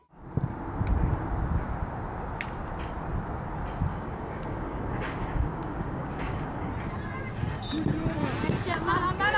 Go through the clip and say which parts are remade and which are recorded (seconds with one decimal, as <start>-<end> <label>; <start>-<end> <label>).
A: 0.0-3.9 recorded; 3.9-6.7 remade; 6.7-9.4 recorded